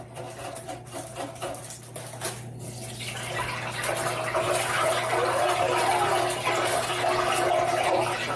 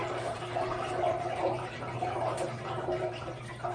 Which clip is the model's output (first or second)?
second